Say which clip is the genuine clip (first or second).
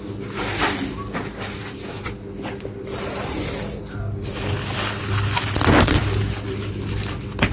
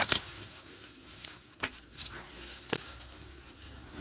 first